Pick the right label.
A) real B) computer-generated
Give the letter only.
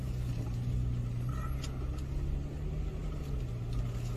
A